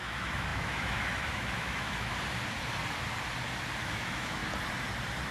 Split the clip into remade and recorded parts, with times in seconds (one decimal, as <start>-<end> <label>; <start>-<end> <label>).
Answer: 0.0-2.1 remade; 2.1-3.8 recorded; 3.8-4.4 remade; 4.4-5.3 recorded